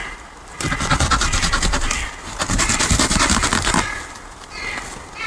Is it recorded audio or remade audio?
recorded